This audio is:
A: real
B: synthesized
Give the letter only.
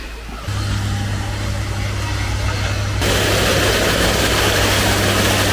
A